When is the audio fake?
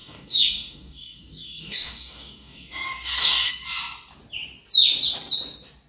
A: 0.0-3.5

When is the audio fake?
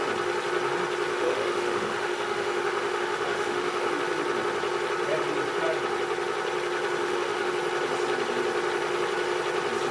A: 1.1-3.9; 7.0-7.5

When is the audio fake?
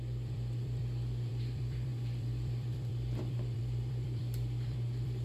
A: 0.0-0.8; 1.3-5.2